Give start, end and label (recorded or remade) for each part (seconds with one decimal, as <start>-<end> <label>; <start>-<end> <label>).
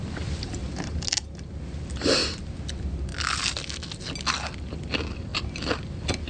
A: 0.0-6.3 recorded